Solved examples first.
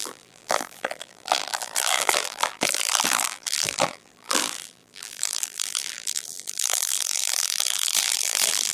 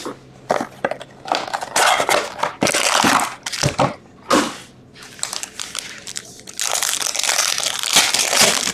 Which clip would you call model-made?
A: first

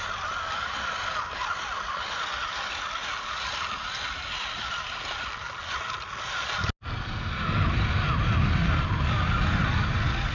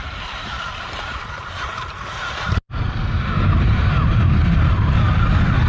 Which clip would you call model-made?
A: second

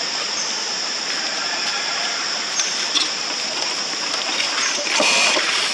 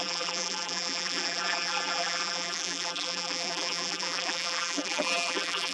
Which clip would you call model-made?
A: second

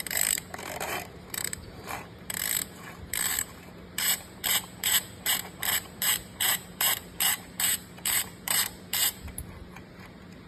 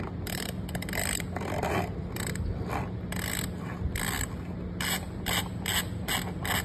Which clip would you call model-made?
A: first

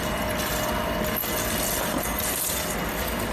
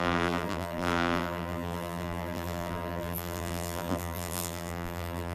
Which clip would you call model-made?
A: second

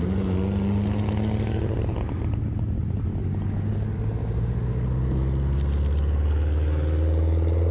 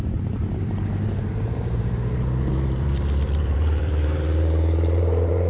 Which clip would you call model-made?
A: second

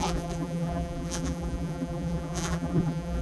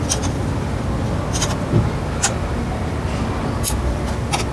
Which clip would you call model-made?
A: first